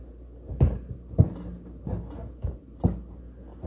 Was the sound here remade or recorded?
recorded